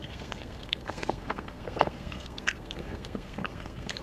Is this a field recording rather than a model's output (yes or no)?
no